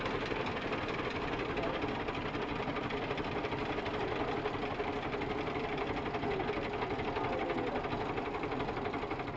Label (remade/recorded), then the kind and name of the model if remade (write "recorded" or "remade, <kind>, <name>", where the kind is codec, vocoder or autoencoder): recorded